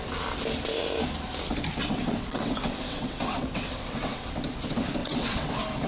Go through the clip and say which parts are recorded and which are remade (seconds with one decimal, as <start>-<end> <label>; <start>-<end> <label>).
0.0-1.8 recorded; 1.8-4.3 remade; 4.3-5.0 recorded; 5.0-5.5 remade; 5.5-5.9 recorded